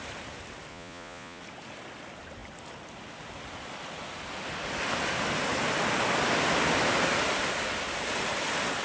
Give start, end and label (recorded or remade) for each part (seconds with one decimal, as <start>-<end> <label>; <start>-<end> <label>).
0.0-0.7 recorded; 0.7-1.4 remade; 1.4-8.8 recorded

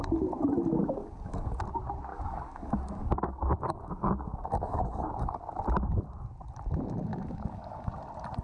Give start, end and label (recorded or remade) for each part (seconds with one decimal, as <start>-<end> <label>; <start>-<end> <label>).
0.0-0.8 recorded; 0.8-1.6 remade; 1.6-2.1 recorded; 2.1-5.4 remade; 5.4-7.1 recorded; 7.1-7.9 remade; 7.9-8.4 recorded

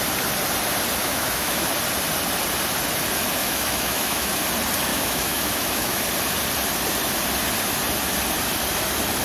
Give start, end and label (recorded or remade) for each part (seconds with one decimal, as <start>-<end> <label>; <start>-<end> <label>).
0.0-1.0 recorded; 1.0-1.7 remade; 1.7-3.4 recorded; 3.4-4.4 remade; 4.4-4.9 recorded; 4.9-6.0 remade; 6.0-9.2 recorded

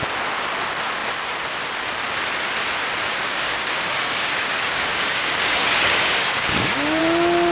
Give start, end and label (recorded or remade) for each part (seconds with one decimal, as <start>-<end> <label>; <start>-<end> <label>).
0.0-3.3 recorded; 3.3-7.0 remade; 7.0-7.5 recorded

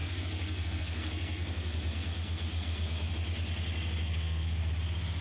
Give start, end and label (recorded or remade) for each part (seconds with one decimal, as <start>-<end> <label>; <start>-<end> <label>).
0.0-3.1 remade; 3.1-4.0 recorded; 4.0-4.7 remade; 4.7-5.2 recorded

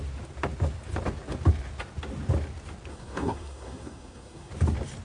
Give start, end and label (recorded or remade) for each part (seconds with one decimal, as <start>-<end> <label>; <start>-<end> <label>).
0.0-2.9 recorded; 2.9-4.5 remade; 4.5-5.0 recorded

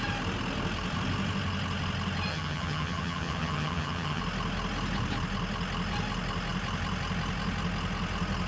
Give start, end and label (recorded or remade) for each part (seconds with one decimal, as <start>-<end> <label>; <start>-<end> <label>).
0.0-2.3 recorded; 2.3-4.2 remade; 4.2-8.5 recorded

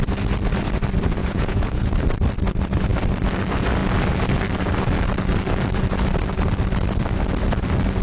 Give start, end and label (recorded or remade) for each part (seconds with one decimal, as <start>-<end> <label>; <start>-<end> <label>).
0.0-1.2 recorded; 1.2-1.9 remade; 1.9-8.0 recorded